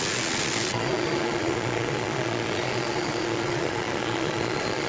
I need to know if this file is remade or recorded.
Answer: remade